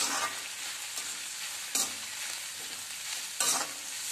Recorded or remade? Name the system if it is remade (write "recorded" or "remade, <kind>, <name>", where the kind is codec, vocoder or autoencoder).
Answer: recorded